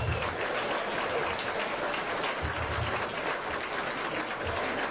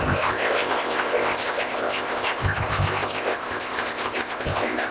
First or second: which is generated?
second